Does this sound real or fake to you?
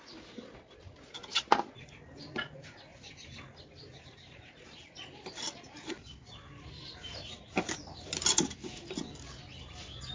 real